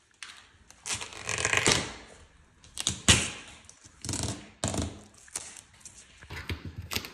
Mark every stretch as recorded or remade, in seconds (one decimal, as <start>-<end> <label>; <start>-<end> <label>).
0.0-7.1 recorded

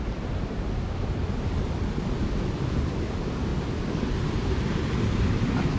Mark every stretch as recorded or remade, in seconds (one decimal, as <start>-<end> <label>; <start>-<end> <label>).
0.0-3.5 recorded; 3.5-4.9 remade; 4.9-5.8 recorded

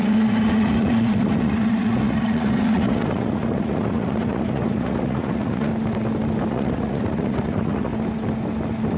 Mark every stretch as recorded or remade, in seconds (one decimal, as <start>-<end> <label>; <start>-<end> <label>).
0.0-5.7 remade; 5.7-6.5 recorded; 6.5-7.9 remade; 7.9-9.0 recorded

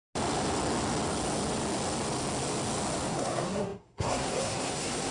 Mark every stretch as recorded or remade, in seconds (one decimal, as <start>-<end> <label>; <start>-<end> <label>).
0.0-3.1 recorded; 3.1-5.1 remade

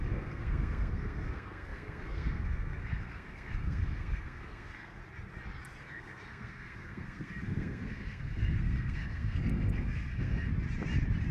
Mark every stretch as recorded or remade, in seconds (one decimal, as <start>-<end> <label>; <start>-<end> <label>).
0.0-5.0 remade; 5.0-5.8 recorded; 5.8-10.5 remade; 10.5-11.3 recorded

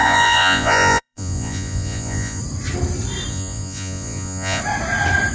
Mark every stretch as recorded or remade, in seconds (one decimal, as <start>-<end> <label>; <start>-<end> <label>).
0.0-2.4 remade; 2.4-3.3 recorded; 3.3-4.6 remade; 4.6-5.3 recorded

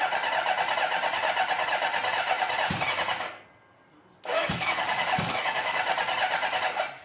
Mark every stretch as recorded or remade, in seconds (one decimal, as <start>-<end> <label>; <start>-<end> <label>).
0.0-4.3 recorded; 4.3-5.8 remade; 5.8-7.0 recorded